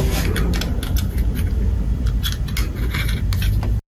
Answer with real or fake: real